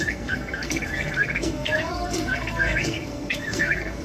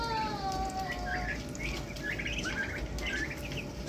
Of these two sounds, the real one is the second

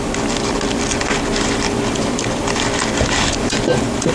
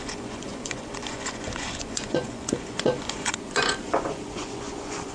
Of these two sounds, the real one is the first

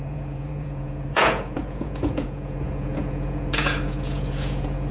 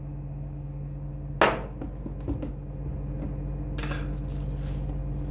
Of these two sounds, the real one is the second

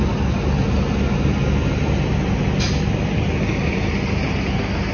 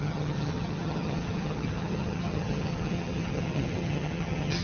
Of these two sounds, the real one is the first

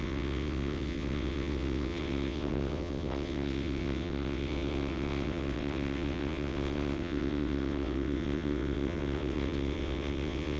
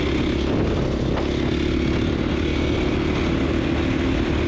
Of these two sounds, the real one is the second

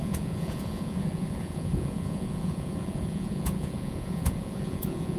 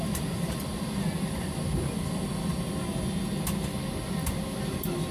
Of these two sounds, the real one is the second